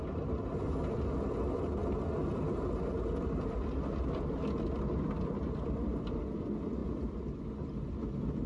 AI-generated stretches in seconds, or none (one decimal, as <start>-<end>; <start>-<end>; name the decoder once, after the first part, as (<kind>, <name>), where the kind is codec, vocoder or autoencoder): none